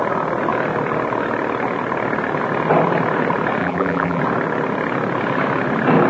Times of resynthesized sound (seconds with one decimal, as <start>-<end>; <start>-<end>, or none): 3.6-4.2